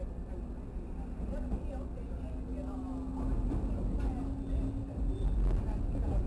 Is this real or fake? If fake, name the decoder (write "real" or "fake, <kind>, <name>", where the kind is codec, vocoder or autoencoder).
real